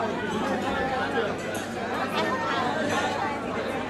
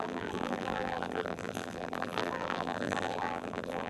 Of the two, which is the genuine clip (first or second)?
first